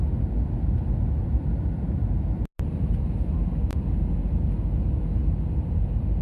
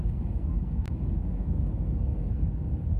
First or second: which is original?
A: first